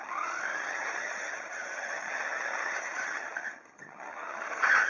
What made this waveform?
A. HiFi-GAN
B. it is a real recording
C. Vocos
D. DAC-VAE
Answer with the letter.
A